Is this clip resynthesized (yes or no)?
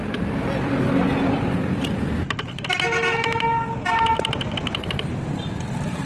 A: no